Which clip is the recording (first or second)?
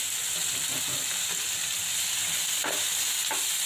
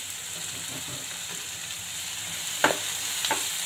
first